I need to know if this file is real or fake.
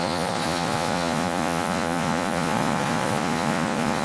fake